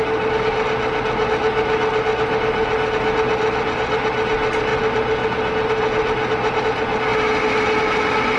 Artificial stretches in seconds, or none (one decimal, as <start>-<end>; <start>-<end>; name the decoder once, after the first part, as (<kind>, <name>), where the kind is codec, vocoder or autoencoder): none